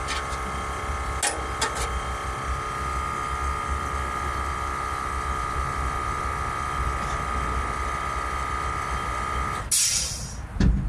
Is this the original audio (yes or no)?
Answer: yes